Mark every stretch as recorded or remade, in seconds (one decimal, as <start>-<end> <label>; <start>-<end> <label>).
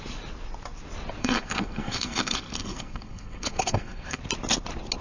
0.0-1.2 recorded; 1.2-4.2 remade; 4.2-5.0 recorded